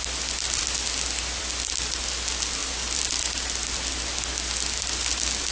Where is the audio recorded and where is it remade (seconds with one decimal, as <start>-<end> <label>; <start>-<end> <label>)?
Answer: 0.0-5.5 recorded